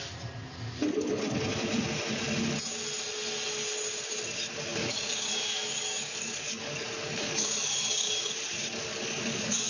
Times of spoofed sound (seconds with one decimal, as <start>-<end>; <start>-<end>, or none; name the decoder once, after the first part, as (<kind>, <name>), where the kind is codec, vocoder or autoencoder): 4.7-8.3 (codec, DAC); 8.9-9.7